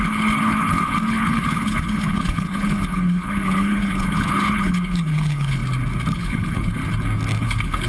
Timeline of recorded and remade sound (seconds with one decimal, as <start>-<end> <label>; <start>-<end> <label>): 0.0-5.6 remade; 5.6-6.1 recorded; 6.1-6.8 remade; 6.8-7.4 recorded; 7.4-7.9 remade